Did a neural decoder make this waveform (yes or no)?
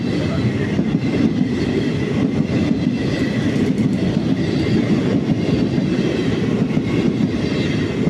no